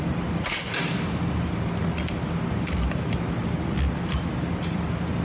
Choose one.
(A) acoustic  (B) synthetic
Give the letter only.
A